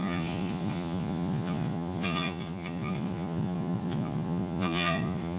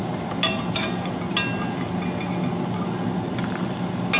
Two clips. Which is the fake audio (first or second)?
first